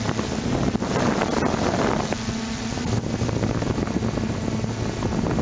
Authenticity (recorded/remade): recorded